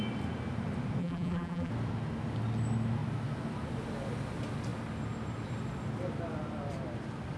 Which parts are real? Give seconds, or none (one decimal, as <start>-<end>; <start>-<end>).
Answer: 0.0-1.0; 1.7-7.4